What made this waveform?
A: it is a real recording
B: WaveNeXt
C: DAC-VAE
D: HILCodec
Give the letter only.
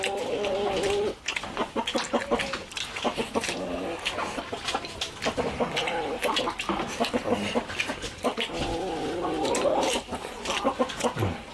A